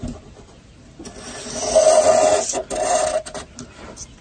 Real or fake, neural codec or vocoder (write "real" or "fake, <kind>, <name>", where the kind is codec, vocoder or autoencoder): real